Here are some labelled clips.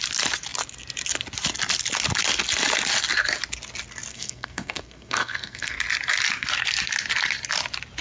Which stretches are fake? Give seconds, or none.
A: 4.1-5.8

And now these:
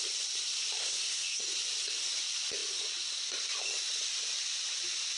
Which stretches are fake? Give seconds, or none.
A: 0.8-1.4

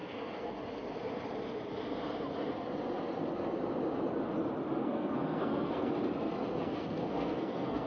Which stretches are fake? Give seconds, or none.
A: 0.0-0.5; 4.8-5.9; 6.6-7.9